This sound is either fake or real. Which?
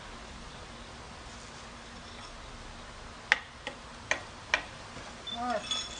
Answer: real